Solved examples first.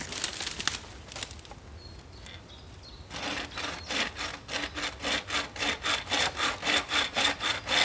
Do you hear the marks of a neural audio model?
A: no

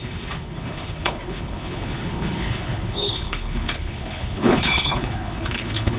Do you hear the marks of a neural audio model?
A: yes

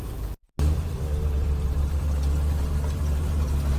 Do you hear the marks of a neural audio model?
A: yes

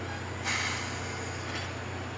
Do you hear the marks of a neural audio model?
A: no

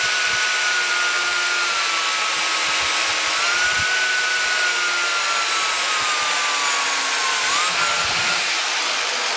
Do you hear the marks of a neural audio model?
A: no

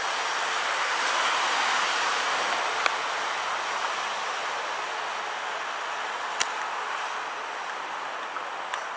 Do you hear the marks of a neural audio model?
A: no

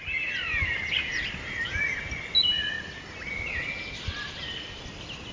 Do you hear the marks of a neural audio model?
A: no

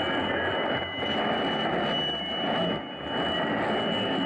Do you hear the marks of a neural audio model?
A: no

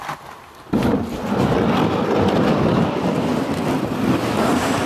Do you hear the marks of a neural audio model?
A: no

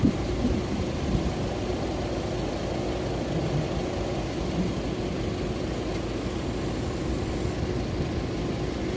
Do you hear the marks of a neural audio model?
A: no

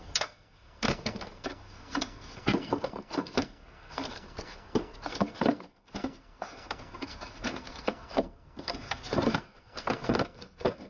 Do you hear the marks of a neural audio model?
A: yes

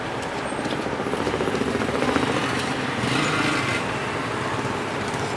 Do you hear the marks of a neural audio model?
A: yes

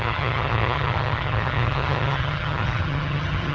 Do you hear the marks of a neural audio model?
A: yes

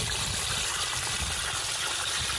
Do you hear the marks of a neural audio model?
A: no